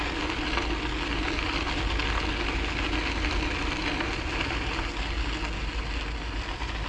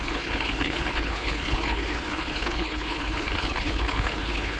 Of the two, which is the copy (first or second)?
second